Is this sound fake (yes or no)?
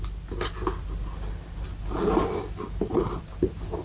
no